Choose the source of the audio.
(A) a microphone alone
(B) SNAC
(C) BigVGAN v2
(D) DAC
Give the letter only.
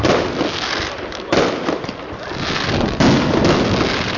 A